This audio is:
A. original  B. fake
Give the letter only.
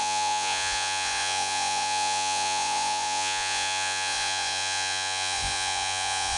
B